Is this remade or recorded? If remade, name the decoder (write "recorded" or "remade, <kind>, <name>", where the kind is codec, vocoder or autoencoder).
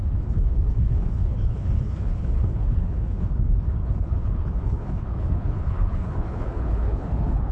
remade, codec, HILCodec